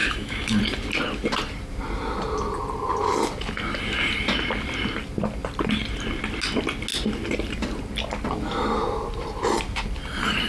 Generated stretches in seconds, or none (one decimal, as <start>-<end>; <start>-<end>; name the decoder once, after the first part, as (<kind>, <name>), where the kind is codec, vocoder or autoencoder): 0.0-0.6 (autoencoder, DAC-VAE)